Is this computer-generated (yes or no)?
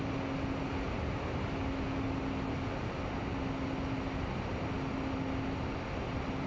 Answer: no